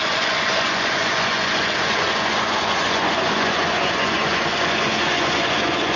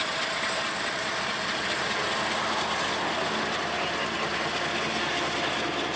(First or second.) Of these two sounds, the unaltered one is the second